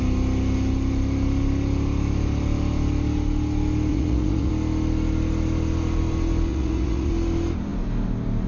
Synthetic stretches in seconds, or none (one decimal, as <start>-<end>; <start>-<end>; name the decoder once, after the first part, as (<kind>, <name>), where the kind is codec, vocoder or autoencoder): 3.9-4.5 (vocoder, Vocos); 6.5-7.1